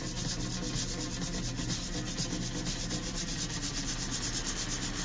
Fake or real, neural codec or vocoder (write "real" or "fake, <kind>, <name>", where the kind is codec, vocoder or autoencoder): real